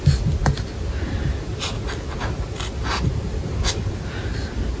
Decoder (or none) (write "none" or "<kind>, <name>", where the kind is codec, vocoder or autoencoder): none